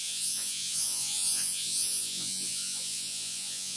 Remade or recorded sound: remade